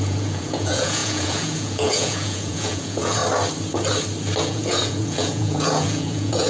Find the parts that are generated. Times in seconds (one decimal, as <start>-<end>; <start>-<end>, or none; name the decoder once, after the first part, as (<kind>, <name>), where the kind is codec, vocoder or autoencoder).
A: 0.0-3.2 (vocoder, Vocos); 4.4-6.5